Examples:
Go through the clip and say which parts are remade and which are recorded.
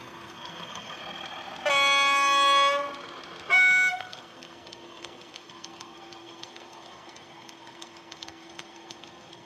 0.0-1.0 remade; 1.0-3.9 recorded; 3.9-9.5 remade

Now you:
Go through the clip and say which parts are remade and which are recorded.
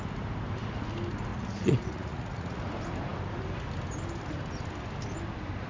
0.0-1.3 recorded; 1.3-2.6 remade; 2.6-5.7 recorded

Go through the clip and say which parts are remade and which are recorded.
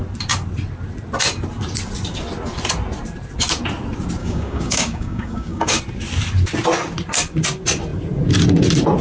0.0-4.2 recorded; 4.2-5.8 remade; 5.8-9.0 recorded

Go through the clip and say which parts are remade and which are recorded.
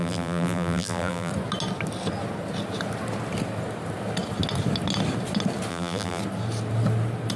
0.0-1.3 remade; 1.3-5.7 recorded; 5.7-6.2 remade; 6.2-7.4 recorded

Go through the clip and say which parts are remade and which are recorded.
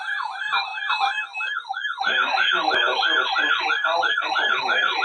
0.0-0.7 remade; 0.7-2.0 recorded; 2.0-2.9 remade; 2.9-4.3 recorded; 4.3-5.0 remade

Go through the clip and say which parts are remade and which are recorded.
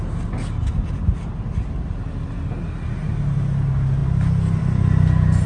0.0-5.5 recorded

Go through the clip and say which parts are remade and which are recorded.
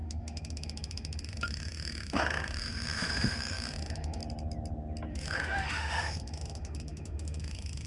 0.0-4.2 remade; 4.2-5.1 recorded; 5.1-7.9 remade